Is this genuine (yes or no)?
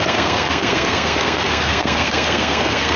no